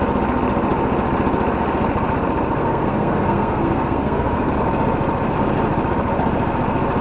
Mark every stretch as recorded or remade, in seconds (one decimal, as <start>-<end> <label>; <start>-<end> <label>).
0.0-2.6 recorded; 2.6-4.5 remade; 4.5-7.0 recorded